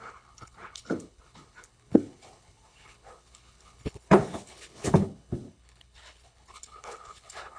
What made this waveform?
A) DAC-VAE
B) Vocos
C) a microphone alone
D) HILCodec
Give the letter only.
D